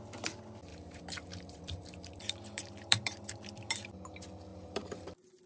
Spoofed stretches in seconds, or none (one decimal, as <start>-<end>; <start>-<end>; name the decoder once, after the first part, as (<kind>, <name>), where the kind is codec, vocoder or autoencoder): 0.7-3.9 (vocoder, BigVGAN v2); 4.5-5.1